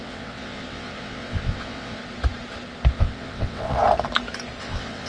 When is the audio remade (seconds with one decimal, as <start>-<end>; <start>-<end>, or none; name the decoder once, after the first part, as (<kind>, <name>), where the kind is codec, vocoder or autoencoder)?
0.0-2.0 (vocoder, WaveNeXt); 2.9-3.8; 4.6-5.1